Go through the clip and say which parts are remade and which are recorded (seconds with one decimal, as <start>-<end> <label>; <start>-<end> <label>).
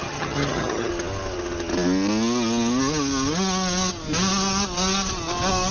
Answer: 0.0-0.9 remade; 0.9-5.7 recorded